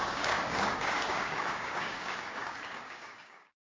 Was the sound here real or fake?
fake